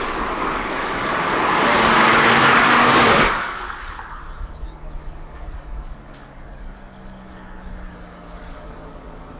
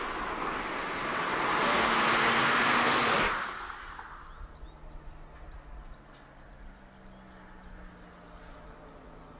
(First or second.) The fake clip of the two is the first